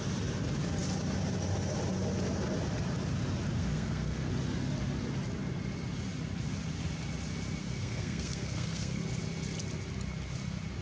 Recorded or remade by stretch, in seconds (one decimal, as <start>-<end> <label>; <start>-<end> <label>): 0.0-3.6 recorded; 3.6-4.3 remade; 4.3-7.6 recorded; 7.6-9.0 remade; 9.0-10.8 recorded

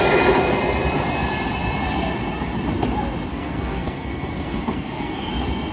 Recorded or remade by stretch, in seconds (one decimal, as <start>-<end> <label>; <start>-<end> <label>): 0.0-3.3 recorded; 3.3-5.3 remade; 5.3-5.7 recorded

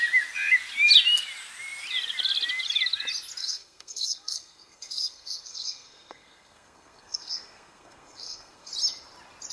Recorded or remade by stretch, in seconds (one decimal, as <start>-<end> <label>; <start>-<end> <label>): 0.0-3.4 recorded; 3.4-8.7 remade; 8.7-9.5 recorded

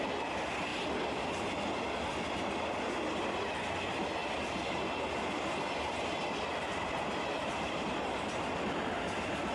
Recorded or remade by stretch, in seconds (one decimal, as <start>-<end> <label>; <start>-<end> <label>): 0.0-9.5 recorded